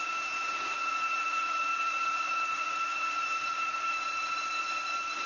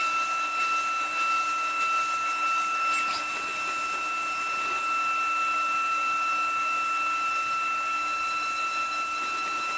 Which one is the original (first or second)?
second